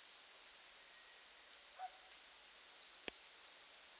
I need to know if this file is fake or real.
real